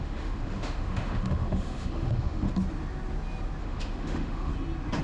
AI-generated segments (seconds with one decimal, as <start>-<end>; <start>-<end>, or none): 0.0-2.5; 3.6-4.5